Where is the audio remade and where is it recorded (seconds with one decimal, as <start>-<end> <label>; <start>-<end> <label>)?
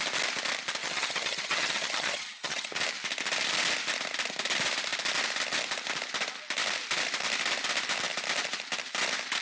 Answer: 0.0-0.8 recorded; 0.8-2.7 remade; 2.7-9.4 recorded